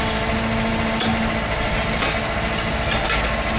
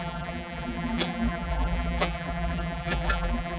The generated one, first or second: second